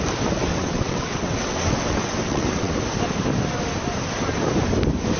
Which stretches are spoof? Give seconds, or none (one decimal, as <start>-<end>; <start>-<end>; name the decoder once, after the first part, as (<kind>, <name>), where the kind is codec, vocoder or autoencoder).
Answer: 0.5-2.7 (vocoder, WaveNeXt)